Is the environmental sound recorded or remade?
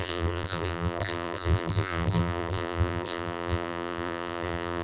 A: remade